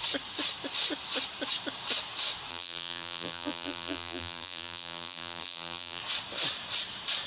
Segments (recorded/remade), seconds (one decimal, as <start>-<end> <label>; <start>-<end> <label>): 0.0-2.5 recorded; 2.5-6.0 remade; 6.0-7.3 recorded